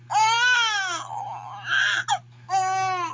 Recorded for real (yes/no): yes